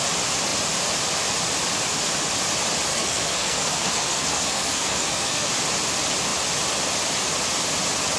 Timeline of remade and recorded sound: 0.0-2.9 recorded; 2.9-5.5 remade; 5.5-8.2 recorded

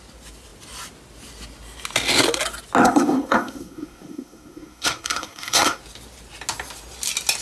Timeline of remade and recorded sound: 0.0-2.8 recorded; 2.8-5.8 remade; 5.8-7.4 recorded